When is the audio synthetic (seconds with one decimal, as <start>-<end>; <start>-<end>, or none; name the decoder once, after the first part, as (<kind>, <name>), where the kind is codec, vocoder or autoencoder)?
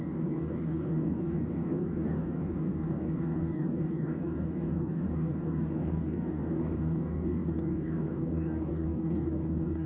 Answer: 0.0-9.9 (codec, DAC)